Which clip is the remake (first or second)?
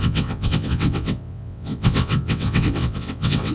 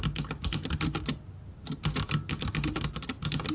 first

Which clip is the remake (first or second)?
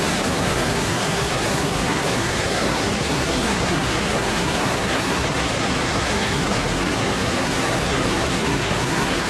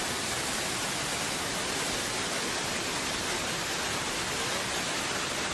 first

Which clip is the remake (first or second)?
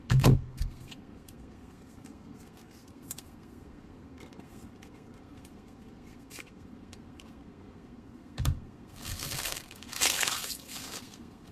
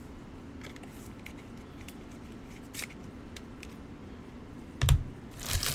first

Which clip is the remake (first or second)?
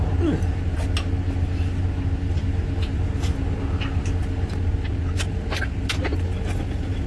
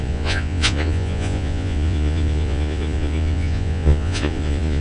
second